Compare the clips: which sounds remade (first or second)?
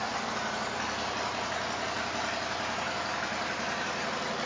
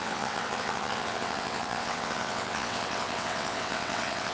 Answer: second